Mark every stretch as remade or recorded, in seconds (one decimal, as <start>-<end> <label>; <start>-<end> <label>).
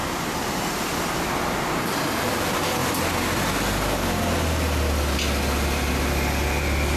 0.0-7.0 recorded